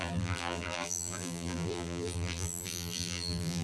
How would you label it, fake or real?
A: fake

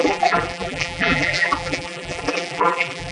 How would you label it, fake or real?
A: fake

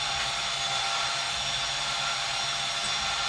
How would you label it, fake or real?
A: real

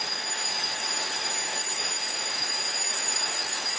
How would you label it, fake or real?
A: fake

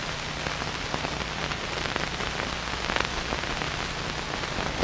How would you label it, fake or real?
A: real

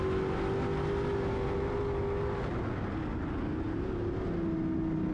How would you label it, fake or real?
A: real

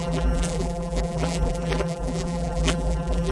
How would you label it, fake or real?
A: fake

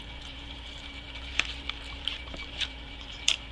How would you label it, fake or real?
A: fake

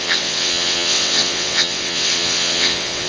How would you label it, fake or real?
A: fake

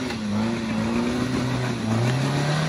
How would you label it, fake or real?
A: real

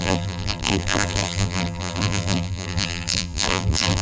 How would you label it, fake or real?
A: fake